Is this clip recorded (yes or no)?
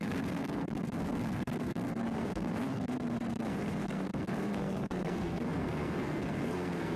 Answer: no